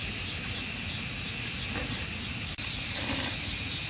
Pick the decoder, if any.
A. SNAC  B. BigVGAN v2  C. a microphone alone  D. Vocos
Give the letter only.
C